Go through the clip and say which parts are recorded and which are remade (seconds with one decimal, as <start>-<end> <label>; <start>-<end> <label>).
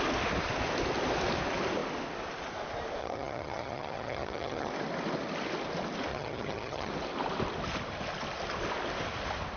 0.0-3.0 recorded; 3.0-4.7 remade; 4.7-6.1 recorded; 6.1-6.9 remade; 6.9-9.6 recorded